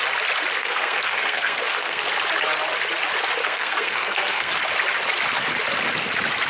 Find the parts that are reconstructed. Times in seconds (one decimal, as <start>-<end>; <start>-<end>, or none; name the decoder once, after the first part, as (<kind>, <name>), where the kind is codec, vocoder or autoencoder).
0.6-2.1 (codec, SNAC); 3.4-4.5